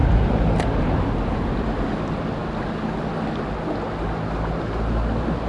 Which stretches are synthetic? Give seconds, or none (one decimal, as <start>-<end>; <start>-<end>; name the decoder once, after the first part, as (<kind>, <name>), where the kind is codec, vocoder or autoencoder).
none

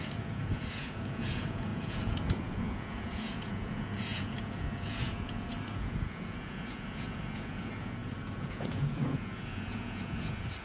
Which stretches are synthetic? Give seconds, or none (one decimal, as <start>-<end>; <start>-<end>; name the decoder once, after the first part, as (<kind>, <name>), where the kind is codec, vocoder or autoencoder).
0.0-10.6 (vocoder, Vocos)